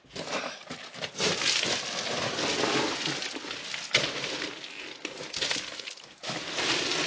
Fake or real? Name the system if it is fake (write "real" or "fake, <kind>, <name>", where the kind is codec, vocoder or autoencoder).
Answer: real